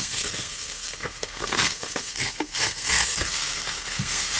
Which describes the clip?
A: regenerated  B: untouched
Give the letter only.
A